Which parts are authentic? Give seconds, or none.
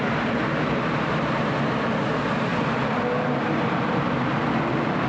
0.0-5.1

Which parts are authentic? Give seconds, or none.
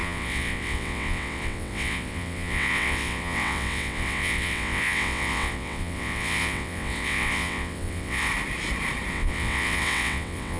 8.3-9.1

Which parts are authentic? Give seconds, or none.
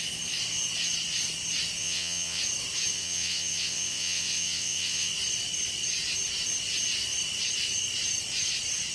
0.0-1.8; 2.4-2.9; 5.1-8.9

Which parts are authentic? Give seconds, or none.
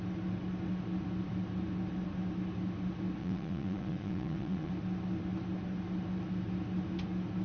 0.0-3.2; 4.7-7.4